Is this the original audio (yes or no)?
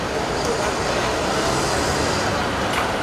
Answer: yes